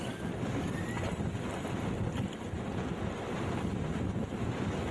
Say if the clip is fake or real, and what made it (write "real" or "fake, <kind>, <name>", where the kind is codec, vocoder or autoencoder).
real